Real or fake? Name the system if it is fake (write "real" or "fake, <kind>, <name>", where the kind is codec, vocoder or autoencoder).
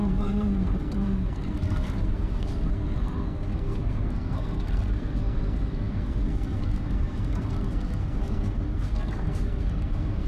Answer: fake, codec, SNAC